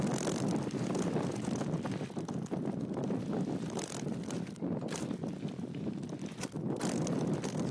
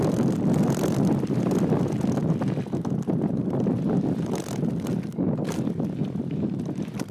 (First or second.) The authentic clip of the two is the second